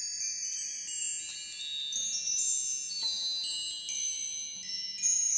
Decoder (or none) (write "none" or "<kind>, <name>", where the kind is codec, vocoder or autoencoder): none